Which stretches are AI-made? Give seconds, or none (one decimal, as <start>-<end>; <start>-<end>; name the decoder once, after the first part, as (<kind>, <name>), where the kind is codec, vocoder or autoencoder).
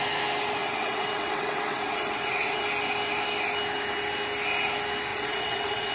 0.6-2.6 (vocoder, WaveNeXt); 5.1-5.9